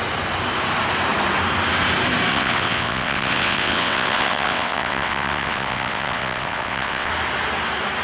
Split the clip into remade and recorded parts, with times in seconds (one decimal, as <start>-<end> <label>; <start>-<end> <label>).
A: 0.0-2.3 recorded; 2.3-7.1 remade; 7.1-8.0 recorded